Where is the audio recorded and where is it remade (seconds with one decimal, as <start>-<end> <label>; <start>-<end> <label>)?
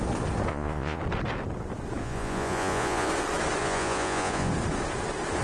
0.0-0.5 recorded; 0.5-1.0 remade; 1.0-2.0 recorded; 2.0-3.1 remade; 3.1-3.6 recorded; 3.6-4.5 remade; 4.5-5.4 recorded